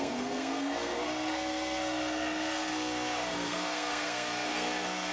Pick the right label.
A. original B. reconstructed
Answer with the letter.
B